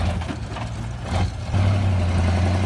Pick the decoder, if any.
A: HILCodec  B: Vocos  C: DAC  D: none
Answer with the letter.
D